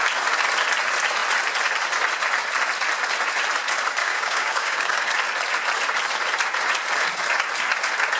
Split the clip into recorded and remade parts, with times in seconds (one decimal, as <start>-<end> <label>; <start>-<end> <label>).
0.0-4.0 recorded; 4.0-5.1 remade; 5.1-8.2 recorded